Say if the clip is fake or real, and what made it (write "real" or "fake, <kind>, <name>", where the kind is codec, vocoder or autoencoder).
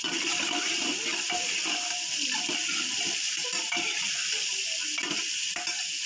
real